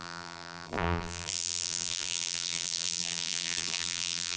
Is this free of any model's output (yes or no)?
no